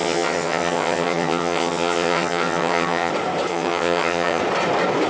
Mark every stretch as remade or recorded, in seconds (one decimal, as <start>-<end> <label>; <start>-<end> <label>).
0.0-3.1 remade; 3.1-3.5 recorded; 3.5-4.4 remade; 4.4-5.1 recorded